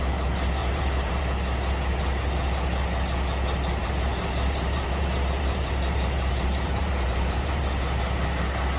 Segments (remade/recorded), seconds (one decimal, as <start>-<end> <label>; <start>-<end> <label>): 0.0-0.6 recorded; 0.6-1.2 remade; 1.2-3.8 recorded; 3.8-7.6 remade; 7.6-8.8 recorded